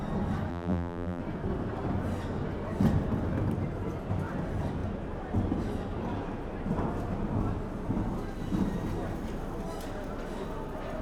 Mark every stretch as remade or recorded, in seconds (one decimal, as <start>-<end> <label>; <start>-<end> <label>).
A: 0.0-0.5 recorded; 0.5-1.2 remade; 1.2-11.0 recorded